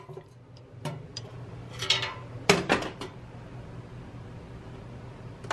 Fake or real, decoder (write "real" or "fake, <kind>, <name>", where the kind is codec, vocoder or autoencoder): fake, vocoder, BigVGAN v2